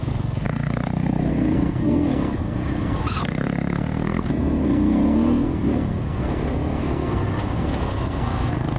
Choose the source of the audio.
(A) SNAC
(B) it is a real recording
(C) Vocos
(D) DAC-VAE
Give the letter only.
A